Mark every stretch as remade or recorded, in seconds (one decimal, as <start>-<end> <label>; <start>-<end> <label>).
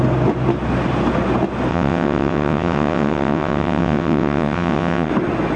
0.0-1.7 recorded; 1.7-5.1 remade; 5.1-5.6 recorded